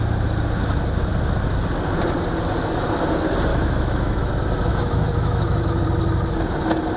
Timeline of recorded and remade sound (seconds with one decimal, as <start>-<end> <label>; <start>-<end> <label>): 0.0-3.5 recorded; 3.5-4.3 remade; 4.3-4.7 recorded; 4.7-5.8 remade; 5.8-7.0 recorded